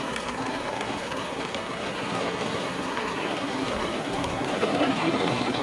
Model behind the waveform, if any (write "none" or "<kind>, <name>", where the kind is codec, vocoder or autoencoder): codec, SNAC